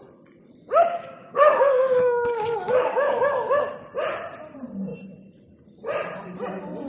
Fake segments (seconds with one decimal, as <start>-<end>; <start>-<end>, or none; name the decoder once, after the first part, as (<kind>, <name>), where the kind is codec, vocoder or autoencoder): 1.0-3.6 (codec, DAC)